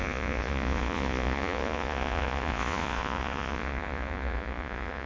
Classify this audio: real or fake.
fake